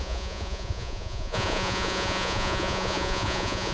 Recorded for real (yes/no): no